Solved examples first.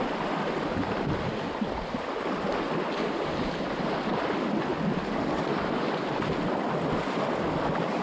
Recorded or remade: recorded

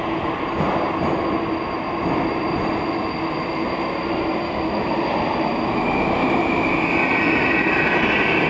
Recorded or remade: recorded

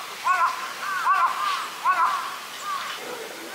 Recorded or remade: recorded